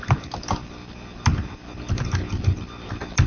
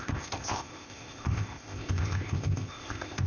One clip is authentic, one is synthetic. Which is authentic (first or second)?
first